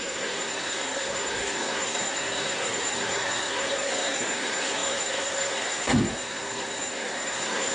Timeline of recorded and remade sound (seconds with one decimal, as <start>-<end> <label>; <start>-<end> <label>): 0.0-7.7 remade